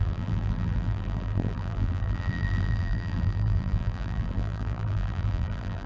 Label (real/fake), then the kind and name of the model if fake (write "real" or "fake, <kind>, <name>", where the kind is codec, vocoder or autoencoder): fake, vocoder, BigVGAN v2